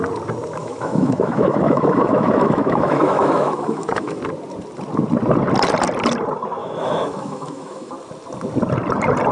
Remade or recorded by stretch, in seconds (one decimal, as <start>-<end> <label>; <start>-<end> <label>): 0.0-0.6 recorded; 0.6-4.2 remade; 4.2-6.6 recorded; 6.6-7.9 remade; 7.9-9.3 recorded

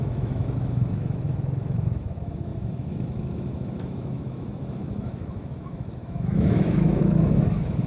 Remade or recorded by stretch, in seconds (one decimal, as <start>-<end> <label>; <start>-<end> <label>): 0.0-7.9 remade

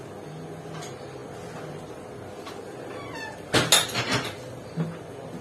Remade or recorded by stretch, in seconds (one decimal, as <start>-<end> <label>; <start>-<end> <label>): 0.0-5.4 recorded

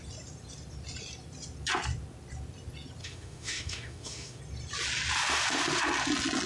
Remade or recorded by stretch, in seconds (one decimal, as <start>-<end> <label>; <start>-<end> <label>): 0.0-3.0 recorded; 3.0-4.4 remade; 4.4-6.5 recorded